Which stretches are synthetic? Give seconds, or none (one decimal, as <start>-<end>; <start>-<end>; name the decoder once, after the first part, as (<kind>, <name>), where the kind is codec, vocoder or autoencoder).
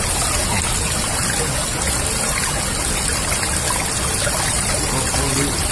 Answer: none